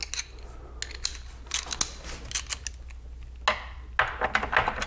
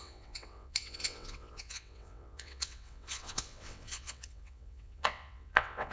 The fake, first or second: second